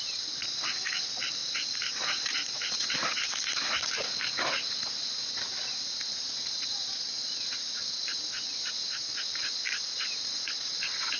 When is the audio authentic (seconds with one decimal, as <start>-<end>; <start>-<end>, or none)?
0.0-11.2